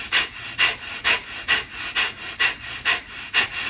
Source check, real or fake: fake